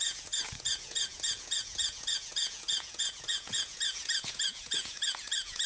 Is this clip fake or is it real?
fake